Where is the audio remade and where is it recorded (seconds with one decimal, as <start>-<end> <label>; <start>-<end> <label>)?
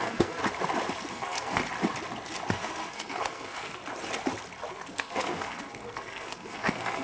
0.0-0.4 remade; 0.4-1.1 recorded; 1.1-1.6 remade; 1.6-2.5 recorded; 2.5-3.8 remade; 3.8-4.7 recorded; 4.7-7.0 remade